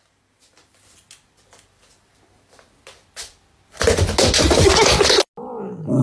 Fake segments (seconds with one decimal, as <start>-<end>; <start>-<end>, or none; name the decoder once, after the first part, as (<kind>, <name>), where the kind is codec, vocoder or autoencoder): none